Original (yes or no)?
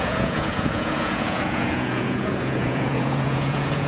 no